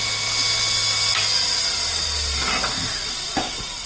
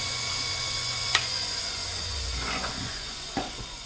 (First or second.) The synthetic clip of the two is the second